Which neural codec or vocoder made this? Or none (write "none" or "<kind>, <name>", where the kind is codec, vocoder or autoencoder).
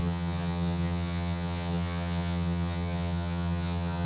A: vocoder, HiFi-GAN